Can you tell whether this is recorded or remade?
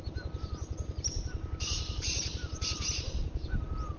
recorded